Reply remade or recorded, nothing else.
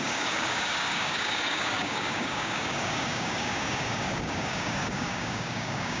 remade